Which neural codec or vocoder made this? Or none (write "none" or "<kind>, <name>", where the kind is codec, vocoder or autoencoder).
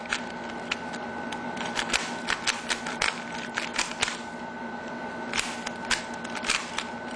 none